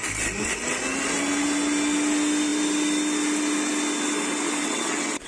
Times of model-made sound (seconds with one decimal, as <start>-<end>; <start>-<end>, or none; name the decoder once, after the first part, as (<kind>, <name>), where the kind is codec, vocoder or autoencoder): 4.6-5.3 (vocoder, WaveNeXt)